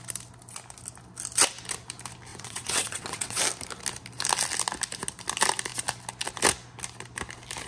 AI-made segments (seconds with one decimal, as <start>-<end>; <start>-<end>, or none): 2.3-3.4